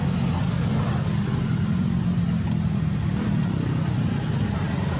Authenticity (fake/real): real